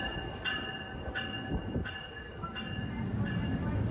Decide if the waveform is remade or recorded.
recorded